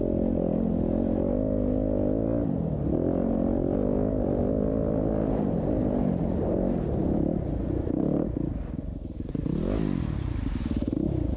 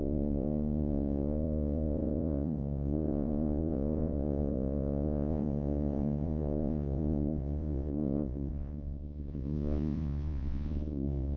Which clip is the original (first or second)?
first